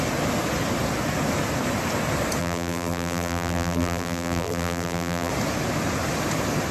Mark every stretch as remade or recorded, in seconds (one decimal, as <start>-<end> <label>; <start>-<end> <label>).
0.0-2.4 recorded; 2.4-5.3 remade; 5.3-6.7 recorded